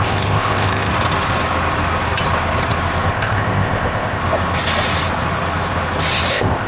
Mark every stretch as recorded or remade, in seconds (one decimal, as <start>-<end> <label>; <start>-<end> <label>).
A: 0.0-0.9 remade; 0.9-3.1 recorded; 3.1-4.2 remade; 4.2-6.3 recorded; 6.3-6.7 remade